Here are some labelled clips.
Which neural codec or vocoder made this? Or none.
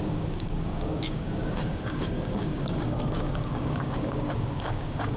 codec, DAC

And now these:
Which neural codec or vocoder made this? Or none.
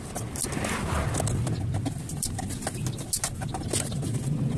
none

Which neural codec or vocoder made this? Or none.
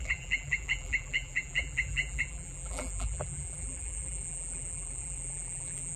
vocoder, BigVGAN v2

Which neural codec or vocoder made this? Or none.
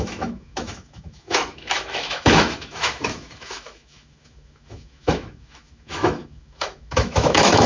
autoencoder, DAC-VAE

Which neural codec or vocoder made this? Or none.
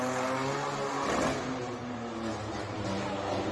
none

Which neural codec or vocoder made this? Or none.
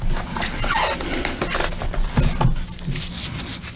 none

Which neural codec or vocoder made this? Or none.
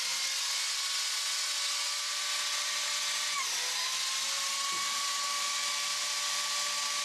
none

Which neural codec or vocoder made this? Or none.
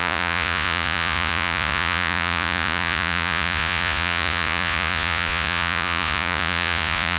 vocoder, Vocos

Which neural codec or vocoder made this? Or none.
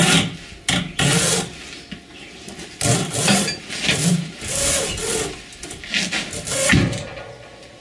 none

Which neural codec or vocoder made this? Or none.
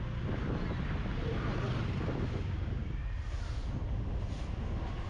none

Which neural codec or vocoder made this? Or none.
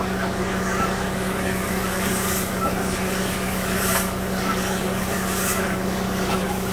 codec, DAC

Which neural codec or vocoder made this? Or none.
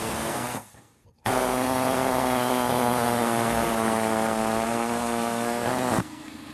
codec, SNAC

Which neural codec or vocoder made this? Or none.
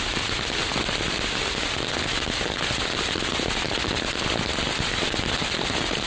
none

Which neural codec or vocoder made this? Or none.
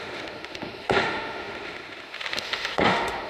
autoencoder, DAC-VAE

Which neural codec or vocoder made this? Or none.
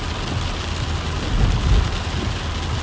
none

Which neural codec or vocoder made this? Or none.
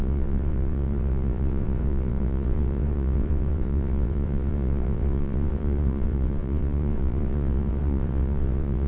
vocoder, WaveNeXt